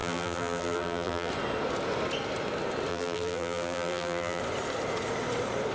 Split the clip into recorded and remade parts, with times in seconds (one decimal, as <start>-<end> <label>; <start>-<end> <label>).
0.0-1.3 remade; 1.3-2.9 recorded; 2.9-4.4 remade; 4.4-5.7 recorded